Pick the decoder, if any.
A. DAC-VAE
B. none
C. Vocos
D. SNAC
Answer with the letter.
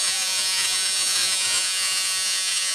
C